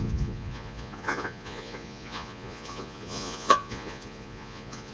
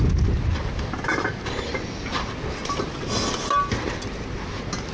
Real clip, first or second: second